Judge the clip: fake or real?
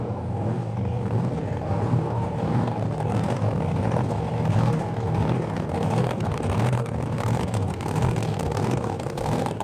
fake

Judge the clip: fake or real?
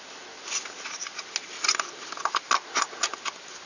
real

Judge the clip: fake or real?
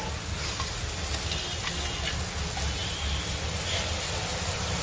real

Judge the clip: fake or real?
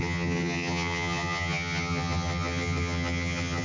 fake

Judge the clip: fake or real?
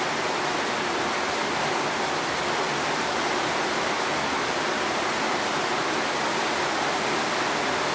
real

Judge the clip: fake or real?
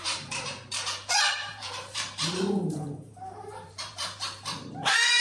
fake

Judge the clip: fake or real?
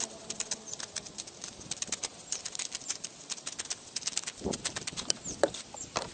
fake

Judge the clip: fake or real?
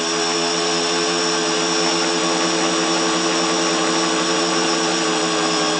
real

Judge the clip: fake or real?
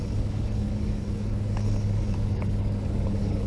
fake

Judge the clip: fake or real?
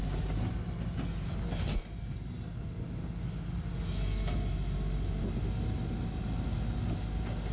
real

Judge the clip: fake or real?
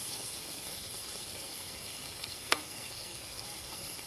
fake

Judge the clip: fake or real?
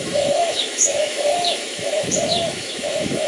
fake